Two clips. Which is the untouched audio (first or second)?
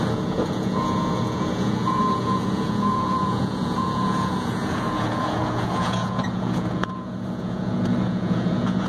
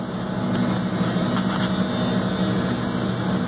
second